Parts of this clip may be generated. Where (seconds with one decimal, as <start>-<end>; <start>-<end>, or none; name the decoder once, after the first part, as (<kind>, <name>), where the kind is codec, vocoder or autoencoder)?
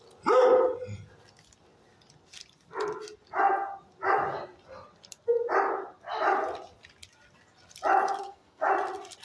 8.2-8.7 (codec, SNAC)